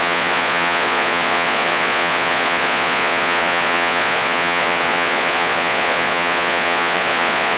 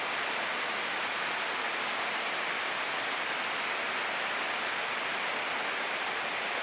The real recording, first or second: second